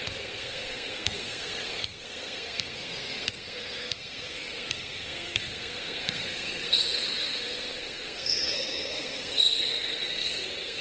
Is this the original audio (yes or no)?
no